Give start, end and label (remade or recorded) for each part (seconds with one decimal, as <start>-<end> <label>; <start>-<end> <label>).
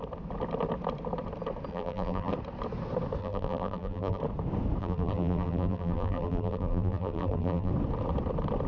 0.0-1.7 recorded; 1.7-2.3 remade; 2.3-3.2 recorded; 3.2-4.2 remade; 4.2-4.8 recorded; 4.8-7.7 remade; 7.7-8.7 recorded